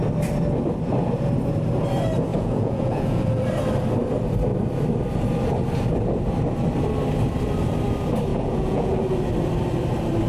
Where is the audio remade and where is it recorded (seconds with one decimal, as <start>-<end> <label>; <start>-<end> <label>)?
0.0-2.3 recorded; 2.3-3.4 remade; 3.4-8.3 recorded; 8.3-8.9 remade; 8.9-10.3 recorded